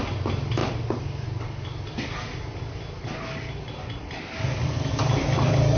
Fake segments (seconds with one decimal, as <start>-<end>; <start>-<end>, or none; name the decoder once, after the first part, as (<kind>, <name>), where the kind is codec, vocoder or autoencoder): none

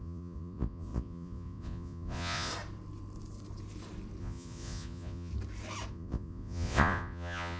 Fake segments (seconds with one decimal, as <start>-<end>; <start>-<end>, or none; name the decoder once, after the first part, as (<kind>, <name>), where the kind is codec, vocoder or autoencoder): 0.0-2.5 (vocoder, Vocos); 4.2-5.3; 5.9-7.6